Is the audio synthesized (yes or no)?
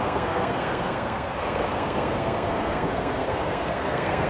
yes